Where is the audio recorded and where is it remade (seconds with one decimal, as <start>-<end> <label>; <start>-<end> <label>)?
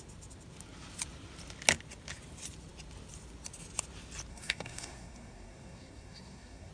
0.0-4.3 recorded; 4.3-6.7 remade